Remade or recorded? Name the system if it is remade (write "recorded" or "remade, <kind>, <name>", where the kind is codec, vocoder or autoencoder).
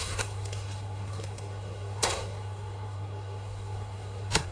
remade, codec, SNAC